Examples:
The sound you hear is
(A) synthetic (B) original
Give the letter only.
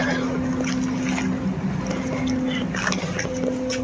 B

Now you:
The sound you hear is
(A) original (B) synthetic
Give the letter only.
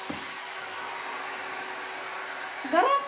A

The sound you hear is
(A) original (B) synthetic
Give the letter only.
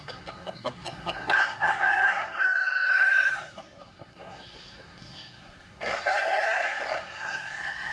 B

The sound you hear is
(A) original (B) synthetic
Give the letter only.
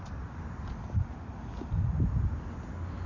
A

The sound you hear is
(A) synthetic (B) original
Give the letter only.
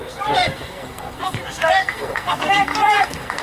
A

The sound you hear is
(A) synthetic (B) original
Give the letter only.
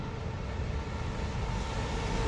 B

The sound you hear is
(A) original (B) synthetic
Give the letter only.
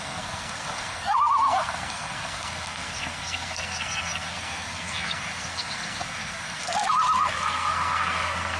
B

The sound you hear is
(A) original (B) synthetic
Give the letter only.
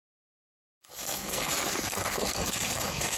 B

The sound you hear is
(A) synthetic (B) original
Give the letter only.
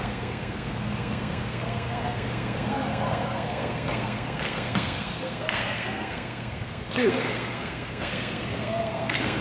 A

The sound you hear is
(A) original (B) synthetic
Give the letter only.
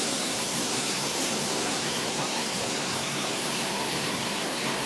B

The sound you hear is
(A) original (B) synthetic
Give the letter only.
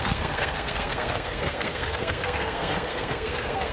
B